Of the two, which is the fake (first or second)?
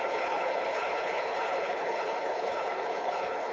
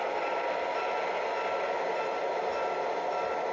first